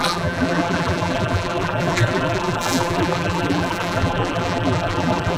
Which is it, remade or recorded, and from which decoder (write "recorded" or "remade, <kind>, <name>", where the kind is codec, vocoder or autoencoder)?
remade, vocoder, BigVGAN v2